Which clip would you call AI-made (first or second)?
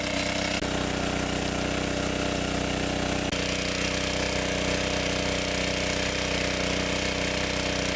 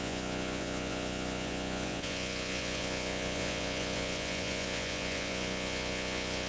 second